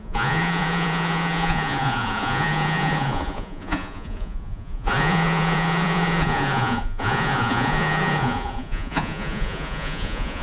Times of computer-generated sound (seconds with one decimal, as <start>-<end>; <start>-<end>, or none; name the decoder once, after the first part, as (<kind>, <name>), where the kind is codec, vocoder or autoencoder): 0.0-10.4 (vocoder, Vocos)